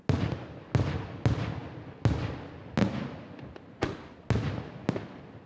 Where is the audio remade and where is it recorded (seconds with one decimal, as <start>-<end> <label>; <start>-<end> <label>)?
0.0-5.5 recorded